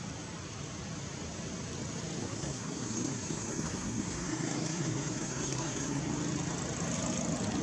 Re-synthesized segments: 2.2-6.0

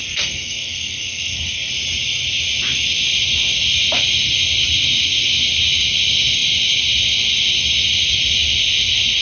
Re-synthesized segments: 0.0-1.7

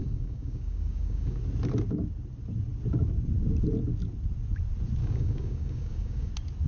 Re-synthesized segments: 0.0-1.4; 5.0-6.3

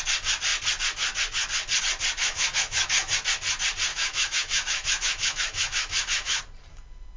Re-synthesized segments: 2.2-3.1; 3.9-6.4

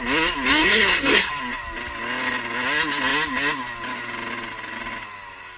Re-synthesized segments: 0.5-1.3

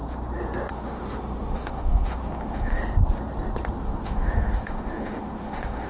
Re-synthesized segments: 0.7-2.8; 3.8-5.9